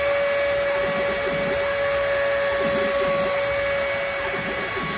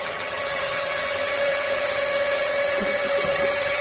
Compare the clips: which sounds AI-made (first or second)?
second